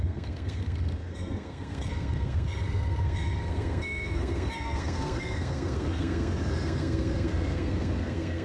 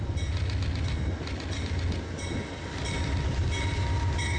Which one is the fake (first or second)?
first